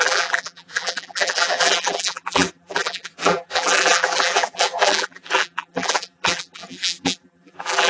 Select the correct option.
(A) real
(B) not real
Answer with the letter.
B